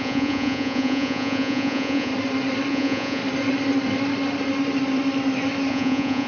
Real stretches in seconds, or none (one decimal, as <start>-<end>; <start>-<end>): 2.1-2.7; 3.2-5.7